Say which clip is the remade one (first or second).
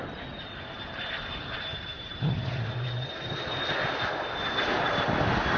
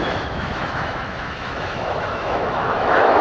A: second